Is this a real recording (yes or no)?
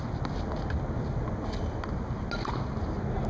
yes